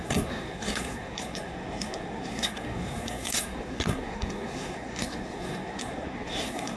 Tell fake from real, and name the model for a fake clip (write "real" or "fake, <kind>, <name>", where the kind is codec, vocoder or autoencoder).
fake, codec, SNAC